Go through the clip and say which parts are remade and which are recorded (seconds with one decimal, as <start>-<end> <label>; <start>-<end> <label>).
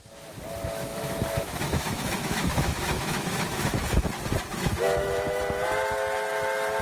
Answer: 0.0-0.9 recorded; 0.9-4.1 remade; 4.1-4.5 recorded; 4.5-5.4 remade; 5.4-6.8 recorded